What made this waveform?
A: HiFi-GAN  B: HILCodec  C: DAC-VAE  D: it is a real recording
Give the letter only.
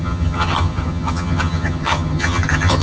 A